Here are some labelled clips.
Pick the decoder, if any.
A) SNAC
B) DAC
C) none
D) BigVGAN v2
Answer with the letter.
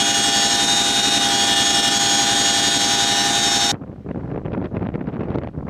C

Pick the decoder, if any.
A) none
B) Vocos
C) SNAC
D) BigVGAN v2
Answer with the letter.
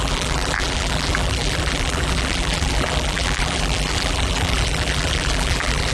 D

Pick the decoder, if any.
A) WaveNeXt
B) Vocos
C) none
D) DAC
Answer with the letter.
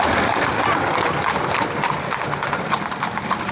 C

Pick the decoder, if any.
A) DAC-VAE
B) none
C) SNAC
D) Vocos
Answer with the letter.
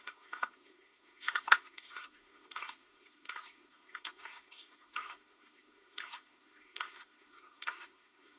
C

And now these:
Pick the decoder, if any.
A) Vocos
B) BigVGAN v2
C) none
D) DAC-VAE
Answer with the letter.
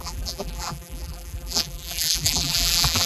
B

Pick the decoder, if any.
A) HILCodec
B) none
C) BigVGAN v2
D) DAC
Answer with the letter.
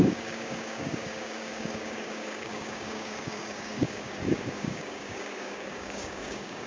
D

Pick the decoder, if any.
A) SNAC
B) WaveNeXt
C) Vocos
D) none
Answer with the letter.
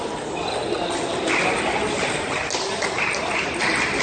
D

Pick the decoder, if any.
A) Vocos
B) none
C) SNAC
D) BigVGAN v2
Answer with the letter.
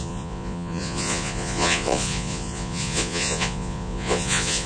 A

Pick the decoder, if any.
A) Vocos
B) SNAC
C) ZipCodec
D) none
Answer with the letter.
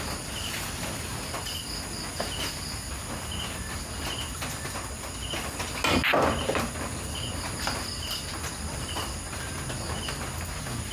D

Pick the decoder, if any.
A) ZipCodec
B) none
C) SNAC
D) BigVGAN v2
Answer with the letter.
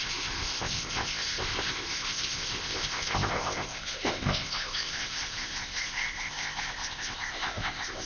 A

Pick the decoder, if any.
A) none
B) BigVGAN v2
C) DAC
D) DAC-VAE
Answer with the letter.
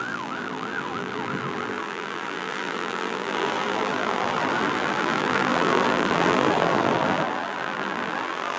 B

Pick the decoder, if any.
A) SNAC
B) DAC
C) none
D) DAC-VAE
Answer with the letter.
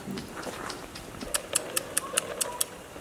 C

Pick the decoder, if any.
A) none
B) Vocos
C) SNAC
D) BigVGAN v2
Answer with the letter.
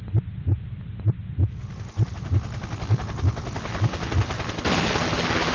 A